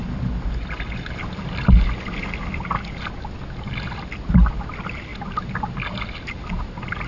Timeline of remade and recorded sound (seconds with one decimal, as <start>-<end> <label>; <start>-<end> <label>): 0.0-7.1 recorded